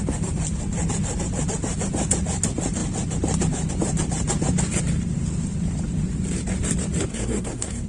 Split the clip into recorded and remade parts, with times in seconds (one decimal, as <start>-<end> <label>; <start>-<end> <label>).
0.0-7.1 recorded; 7.1-7.9 remade